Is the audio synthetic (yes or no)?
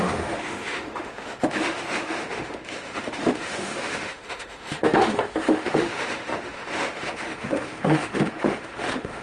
yes